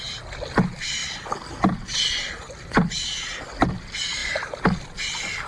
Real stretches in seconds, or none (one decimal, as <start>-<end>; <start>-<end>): 0.0-5.5